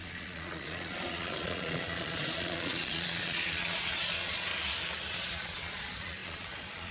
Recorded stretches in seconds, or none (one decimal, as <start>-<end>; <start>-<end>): 4.5-5.1